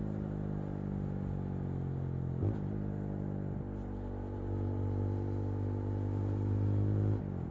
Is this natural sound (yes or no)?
yes